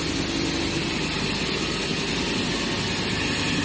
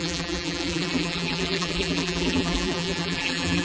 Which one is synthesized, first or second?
second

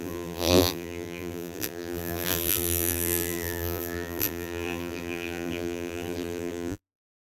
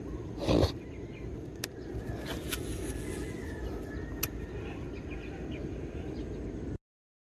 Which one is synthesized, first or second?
first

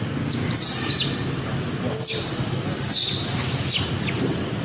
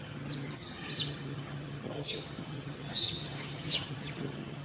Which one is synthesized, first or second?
second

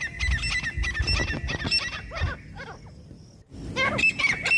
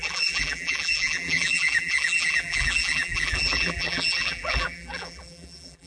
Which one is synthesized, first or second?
second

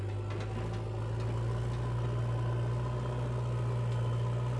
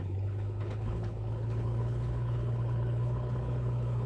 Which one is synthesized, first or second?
second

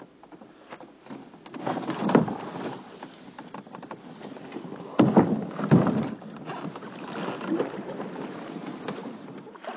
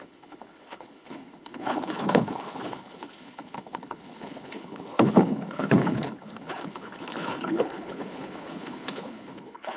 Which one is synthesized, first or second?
second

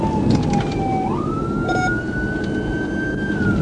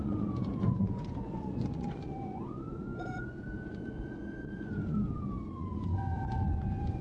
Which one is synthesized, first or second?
second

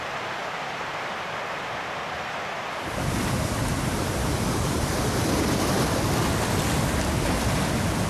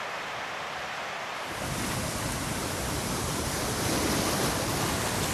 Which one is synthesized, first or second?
second